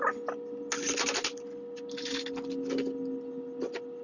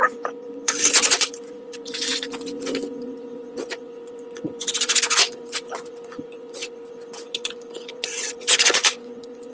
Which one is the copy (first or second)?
second